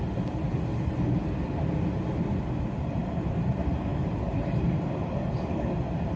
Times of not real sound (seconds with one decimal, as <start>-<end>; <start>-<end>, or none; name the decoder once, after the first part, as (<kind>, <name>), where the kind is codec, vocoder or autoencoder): 3.0-3.5 (vocoder, BigVGAN v2); 3.9-5.0